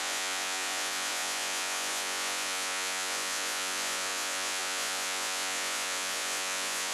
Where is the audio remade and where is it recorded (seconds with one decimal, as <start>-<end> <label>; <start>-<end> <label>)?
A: 0.0-6.9 remade